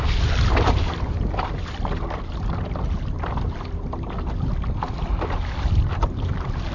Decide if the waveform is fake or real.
real